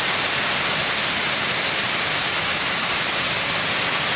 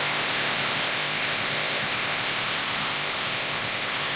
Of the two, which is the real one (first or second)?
first